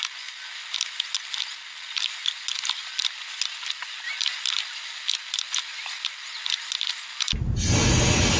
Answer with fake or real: real